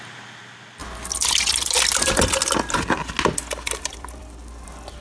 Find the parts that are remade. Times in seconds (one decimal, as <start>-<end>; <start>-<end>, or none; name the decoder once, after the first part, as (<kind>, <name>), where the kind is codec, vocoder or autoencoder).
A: none